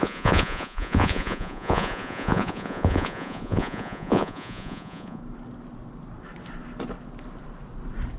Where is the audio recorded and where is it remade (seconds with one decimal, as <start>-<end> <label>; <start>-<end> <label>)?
0.0-5.2 remade; 5.2-8.2 recorded